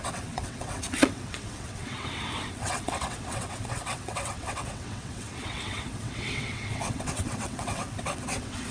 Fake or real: fake